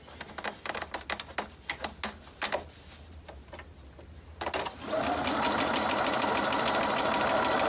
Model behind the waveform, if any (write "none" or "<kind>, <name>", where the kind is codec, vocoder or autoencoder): none